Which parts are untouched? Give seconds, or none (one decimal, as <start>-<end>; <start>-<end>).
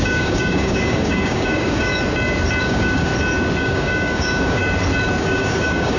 1.9-2.6; 3.1-3.6; 4.6-5.2